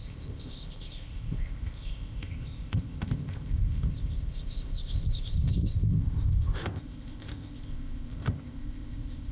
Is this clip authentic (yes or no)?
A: no